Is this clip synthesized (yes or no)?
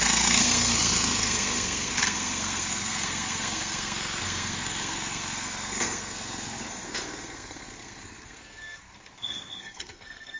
yes